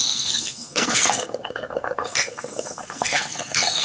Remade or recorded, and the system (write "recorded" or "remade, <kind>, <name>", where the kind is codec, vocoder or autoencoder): remade, codec, SNAC